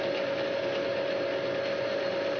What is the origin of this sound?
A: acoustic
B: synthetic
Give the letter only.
A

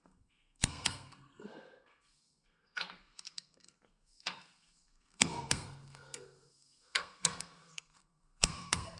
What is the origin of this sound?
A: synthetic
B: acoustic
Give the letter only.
A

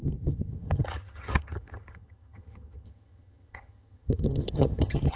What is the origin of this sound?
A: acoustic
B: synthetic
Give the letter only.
B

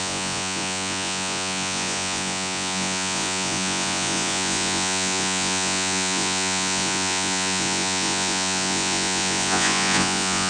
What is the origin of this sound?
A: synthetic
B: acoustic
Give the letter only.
A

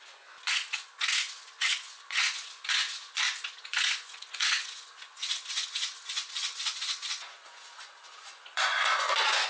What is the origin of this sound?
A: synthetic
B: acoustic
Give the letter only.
A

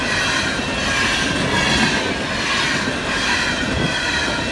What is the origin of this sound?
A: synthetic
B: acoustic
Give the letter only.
B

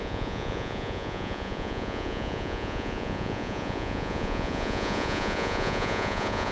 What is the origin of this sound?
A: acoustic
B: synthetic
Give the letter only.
B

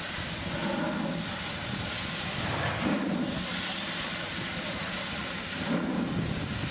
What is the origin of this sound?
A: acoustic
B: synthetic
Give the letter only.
A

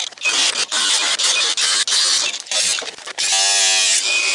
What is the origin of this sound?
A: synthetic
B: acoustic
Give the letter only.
B